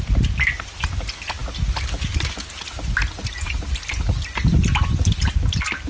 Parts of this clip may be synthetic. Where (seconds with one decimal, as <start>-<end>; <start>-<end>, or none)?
none